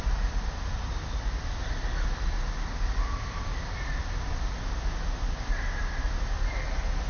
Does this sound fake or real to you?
real